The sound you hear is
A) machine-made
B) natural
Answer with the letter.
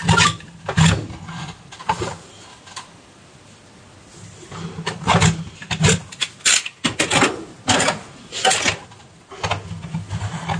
B